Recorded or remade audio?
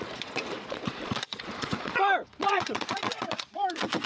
remade